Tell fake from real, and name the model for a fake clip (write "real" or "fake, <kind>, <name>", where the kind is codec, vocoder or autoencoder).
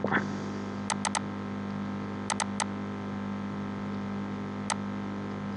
real